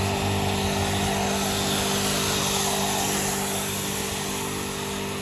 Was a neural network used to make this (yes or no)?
no